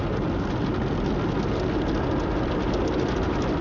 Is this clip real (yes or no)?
yes